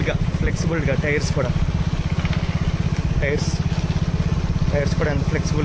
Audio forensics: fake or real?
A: real